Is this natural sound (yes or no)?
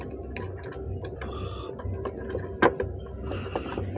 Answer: yes